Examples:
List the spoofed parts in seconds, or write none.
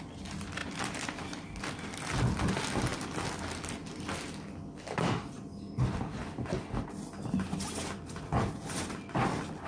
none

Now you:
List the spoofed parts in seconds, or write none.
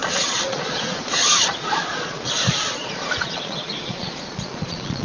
0.0-5.0 (vocoder, Vocos)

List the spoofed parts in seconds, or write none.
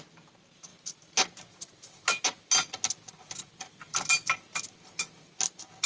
none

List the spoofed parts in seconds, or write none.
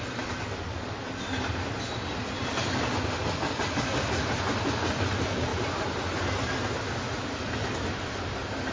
none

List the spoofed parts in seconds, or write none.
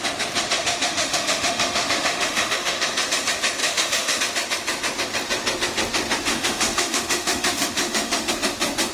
0.6-2.8 (autoencoder, DAC-VAE); 3.6-4.2; 6.3-8.3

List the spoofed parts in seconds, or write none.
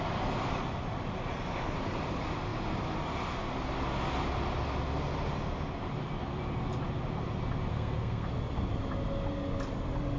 7.7-8.3 (codec, SNAC)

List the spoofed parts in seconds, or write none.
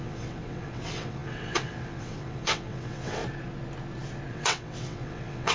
0.0-3.2 (vocoder, WaveNeXt); 4.3-5.5